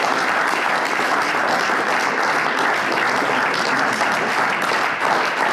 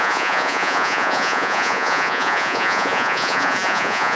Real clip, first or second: first